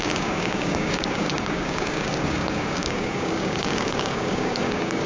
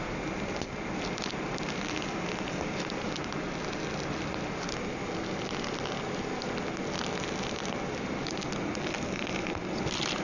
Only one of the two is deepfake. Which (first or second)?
first